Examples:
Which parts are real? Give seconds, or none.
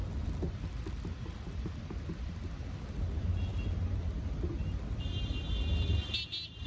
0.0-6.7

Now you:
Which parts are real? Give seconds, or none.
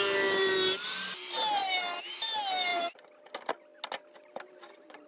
0.0-5.1